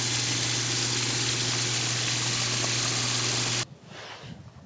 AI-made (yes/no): no